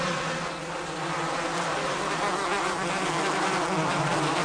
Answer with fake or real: real